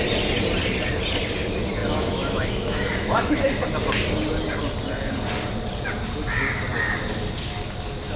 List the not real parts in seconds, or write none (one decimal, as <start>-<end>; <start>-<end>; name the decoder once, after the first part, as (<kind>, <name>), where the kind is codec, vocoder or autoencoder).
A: 1.8-3.4 (autoencoder, DAC-VAE)